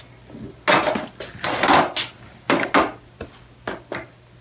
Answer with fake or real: real